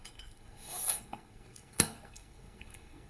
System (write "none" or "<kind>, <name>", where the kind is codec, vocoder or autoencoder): codec, SNAC